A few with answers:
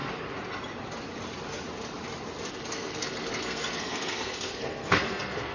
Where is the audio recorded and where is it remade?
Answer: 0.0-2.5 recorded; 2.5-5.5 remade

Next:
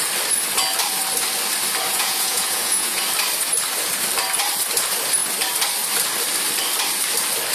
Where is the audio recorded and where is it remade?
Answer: 0.0-1.9 recorded; 1.9-3.0 remade; 3.0-7.5 recorded